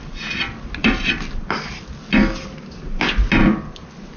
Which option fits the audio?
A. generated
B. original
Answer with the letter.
B